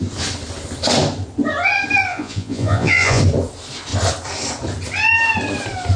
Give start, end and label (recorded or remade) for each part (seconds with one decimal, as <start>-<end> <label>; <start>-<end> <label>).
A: 0.0-2.1 recorded; 2.1-3.2 remade; 3.2-6.0 recorded